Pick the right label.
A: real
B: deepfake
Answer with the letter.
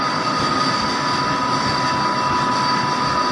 A